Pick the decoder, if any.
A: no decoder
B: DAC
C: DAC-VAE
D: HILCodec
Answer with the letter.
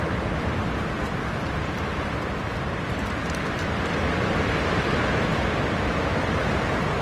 A